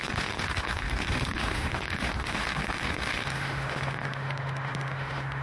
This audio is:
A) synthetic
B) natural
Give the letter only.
A